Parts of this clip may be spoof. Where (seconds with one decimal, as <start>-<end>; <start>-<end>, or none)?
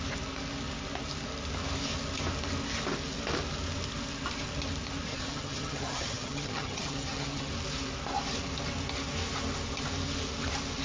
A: 5.1-7.5